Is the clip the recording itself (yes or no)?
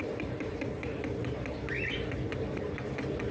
no